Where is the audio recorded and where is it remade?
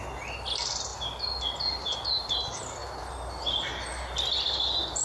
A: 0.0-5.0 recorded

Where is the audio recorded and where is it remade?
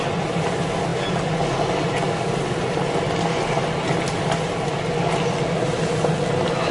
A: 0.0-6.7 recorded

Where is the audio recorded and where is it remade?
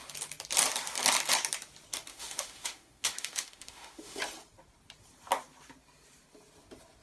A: 0.0-2.1 recorded; 2.1-4.2 remade; 4.2-7.0 recorded